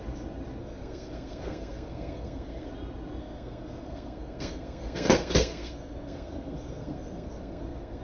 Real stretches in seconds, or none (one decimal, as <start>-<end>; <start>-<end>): 0.0-0.6; 2.7-3.2